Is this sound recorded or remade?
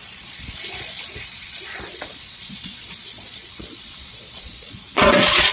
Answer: remade